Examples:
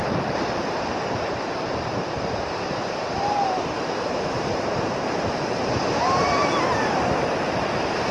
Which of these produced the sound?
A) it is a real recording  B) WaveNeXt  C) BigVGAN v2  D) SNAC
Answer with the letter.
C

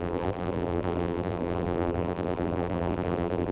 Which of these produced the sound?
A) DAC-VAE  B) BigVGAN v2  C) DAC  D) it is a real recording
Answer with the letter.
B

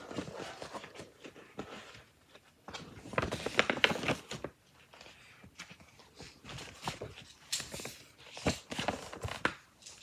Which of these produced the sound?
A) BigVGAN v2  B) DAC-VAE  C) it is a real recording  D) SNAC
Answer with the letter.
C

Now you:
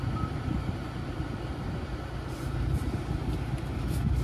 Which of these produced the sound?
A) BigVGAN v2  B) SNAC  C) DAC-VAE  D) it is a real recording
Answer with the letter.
D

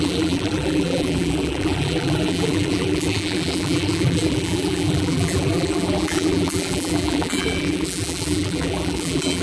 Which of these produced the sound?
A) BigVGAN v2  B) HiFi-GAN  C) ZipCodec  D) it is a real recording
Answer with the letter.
A